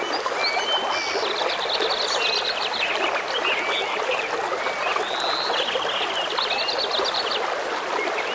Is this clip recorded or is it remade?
recorded